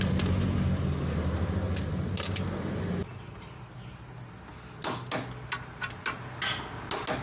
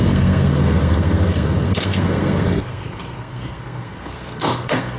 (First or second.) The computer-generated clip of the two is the second